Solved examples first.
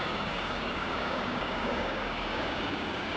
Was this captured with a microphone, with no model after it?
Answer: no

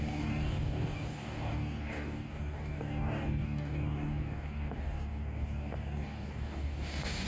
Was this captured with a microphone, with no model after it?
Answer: no